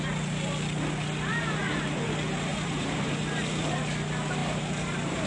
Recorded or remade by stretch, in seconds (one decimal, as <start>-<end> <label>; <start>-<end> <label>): 0.0-1.3 recorded; 1.3-2.0 remade; 2.0-2.5 recorded; 2.5-3.8 remade; 3.8-4.4 recorded; 4.4-5.3 remade